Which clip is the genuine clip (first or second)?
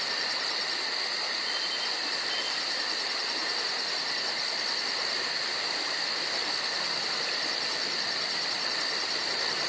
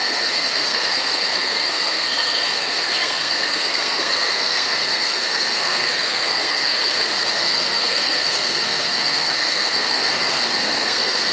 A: first